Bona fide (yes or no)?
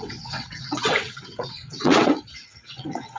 no